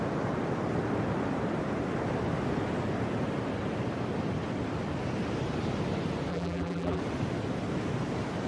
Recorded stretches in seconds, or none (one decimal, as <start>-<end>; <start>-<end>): 0.0-6.3; 7.0-8.5